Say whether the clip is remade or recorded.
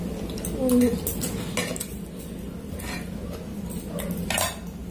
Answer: recorded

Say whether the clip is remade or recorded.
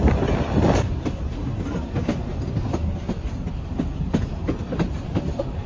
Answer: recorded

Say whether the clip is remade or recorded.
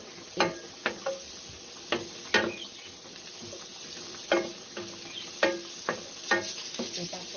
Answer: recorded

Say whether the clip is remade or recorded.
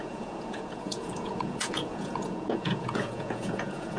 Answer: remade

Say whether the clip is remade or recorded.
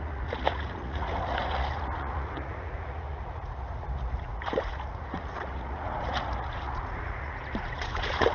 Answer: remade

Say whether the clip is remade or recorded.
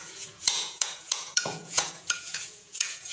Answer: remade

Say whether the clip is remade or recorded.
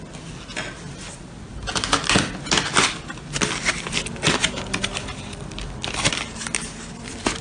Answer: recorded